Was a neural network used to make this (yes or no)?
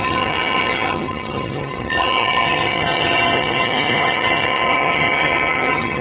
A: yes